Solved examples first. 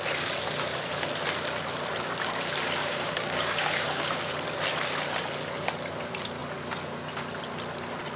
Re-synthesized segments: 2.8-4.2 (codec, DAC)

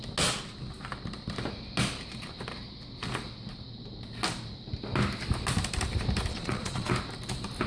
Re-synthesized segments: 6.3-6.9 (vocoder, Vocos)

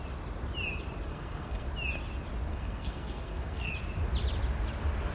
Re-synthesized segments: 1.1-1.7 (codec, SNAC); 2.5-3.7